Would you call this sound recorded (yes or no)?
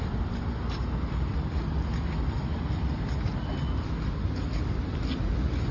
yes